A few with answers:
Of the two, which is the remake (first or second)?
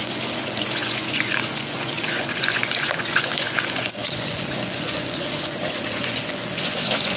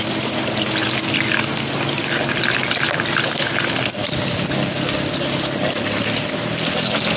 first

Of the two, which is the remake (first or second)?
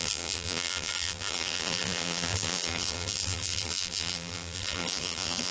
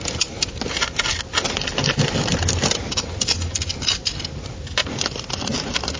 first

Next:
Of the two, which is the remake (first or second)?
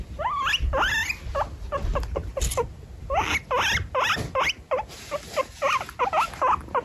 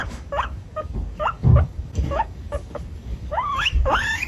second